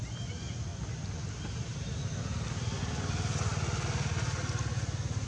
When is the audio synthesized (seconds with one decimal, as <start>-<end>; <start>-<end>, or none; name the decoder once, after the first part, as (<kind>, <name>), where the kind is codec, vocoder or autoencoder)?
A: none